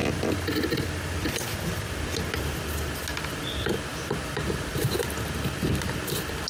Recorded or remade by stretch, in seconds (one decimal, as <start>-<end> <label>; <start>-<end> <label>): 0.0-0.9 remade; 0.9-3.9 recorded; 3.9-4.9 remade; 4.9-6.5 recorded